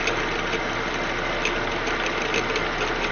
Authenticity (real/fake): real